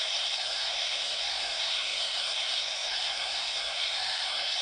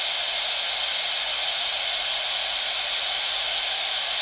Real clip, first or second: second